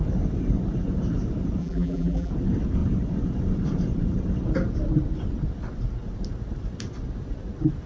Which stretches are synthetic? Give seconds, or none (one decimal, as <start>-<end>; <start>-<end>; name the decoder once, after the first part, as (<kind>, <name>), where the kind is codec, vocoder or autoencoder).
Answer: 1.6-2.3 (vocoder, BigVGAN v2)